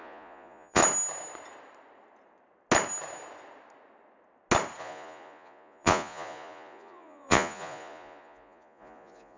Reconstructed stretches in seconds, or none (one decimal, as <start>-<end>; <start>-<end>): 0.0-0.8; 4.8-9.4